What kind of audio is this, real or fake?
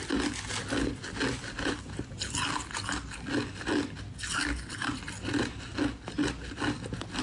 real